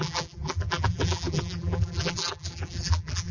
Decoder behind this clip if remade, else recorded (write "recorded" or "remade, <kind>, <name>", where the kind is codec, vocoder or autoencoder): remade, vocoder, BigVGAN v2